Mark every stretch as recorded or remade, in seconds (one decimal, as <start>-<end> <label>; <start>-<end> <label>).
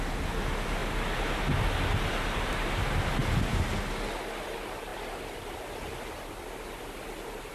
0.0-7.5 recorded